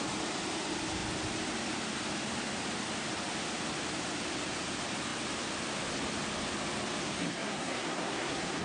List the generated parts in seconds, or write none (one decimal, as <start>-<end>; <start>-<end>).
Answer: 7.0-8.6